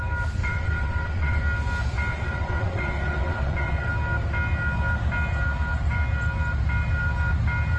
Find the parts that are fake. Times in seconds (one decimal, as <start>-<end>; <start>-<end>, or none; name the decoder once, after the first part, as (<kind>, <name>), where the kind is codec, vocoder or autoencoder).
0.4-1.4 (vocoder, WaveNeXt); 2.1-3.9